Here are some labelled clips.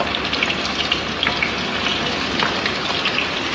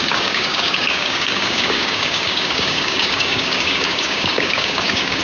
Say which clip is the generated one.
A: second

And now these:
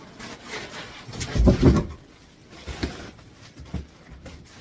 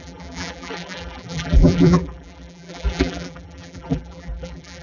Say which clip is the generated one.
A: second